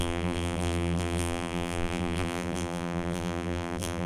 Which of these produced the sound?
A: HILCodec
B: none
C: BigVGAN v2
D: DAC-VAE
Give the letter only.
C